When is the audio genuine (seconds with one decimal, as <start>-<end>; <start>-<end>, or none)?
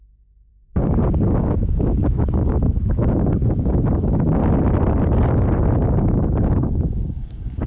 4.4-5.9